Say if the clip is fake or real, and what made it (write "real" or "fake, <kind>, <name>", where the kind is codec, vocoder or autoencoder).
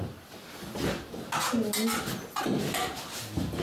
real